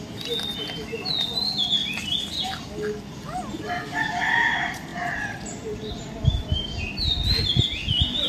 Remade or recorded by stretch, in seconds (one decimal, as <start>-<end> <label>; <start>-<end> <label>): 0.0-8.3 recorded